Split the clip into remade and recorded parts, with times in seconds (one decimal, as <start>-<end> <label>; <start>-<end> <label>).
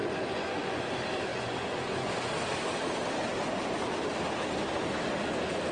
0.0-0.9 remade; 0.9-1.3 recorded; 1.3-2.1 remade; 2.1-5.7 recorded